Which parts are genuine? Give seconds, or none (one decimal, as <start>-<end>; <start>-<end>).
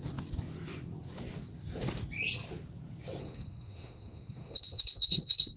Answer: 0.0-3.2